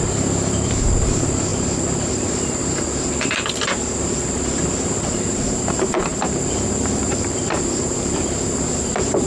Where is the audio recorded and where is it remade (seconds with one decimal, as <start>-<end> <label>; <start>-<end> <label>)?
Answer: 0.0-9.3 remade